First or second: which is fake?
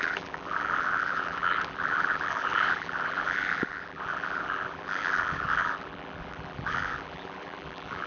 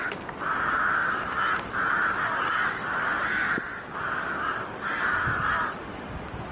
first